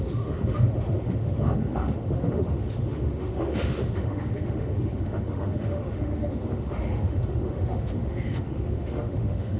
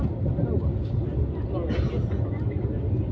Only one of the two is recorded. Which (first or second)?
second